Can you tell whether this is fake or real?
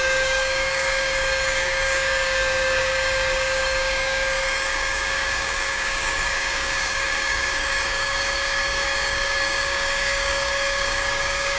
fake